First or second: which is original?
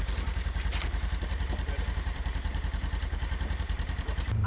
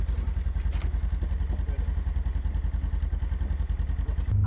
second